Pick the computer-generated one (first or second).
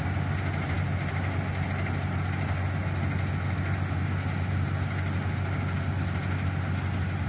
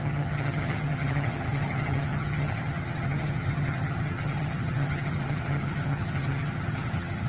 second